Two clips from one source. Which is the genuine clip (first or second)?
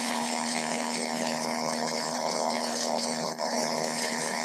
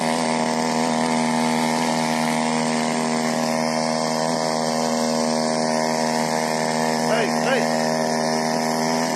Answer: second